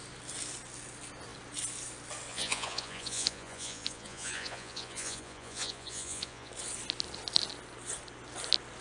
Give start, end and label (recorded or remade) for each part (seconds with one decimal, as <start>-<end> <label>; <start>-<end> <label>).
0.0-2.3 recorded; 2.3-6.5 remade; 6.5-8.8 recorded